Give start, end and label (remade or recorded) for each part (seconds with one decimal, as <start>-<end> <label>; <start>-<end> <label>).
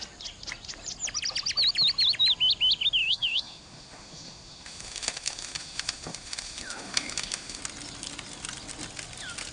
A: 0.0-3.0 recorded; 3.0-7.6 remade; 7.6-9.5 recorded